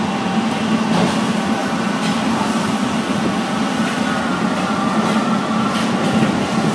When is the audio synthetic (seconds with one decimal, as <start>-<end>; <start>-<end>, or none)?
1.6-3.0